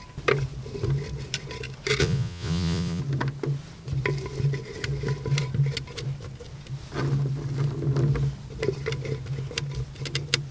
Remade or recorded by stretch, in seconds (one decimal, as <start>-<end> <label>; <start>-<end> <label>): 0.0-2.0 recorded; 2.0-3.0 remade; 3.0-10.5 recorded